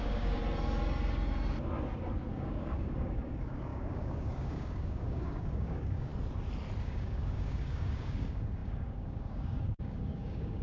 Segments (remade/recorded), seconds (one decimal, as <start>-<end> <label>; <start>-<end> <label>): 0.0-0.4 remade; 0.4-2.3 recorded; 2.3-6.1 remade; 6.1-6.8 recorded; 6.8-10.6 remade